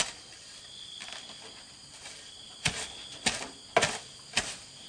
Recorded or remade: recorded